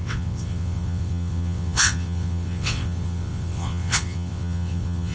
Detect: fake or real fake